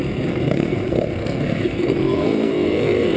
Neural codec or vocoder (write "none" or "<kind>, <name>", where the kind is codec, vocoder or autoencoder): codec, SNAC